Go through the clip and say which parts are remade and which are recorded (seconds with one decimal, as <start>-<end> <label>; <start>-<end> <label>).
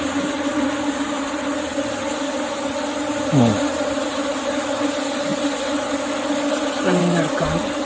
0.0-7.9 recorded